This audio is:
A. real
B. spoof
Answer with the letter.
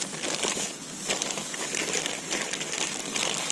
A